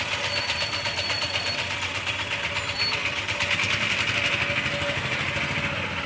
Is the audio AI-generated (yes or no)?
no